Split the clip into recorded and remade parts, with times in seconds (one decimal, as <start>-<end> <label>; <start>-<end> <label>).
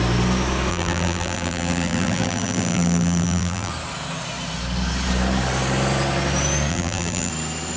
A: 0.0-0.7 recorded; 0.7-3.7 remade; 3.7-6.7 recorded; 6.7-7.3 remade; 7.3-7.8 recorded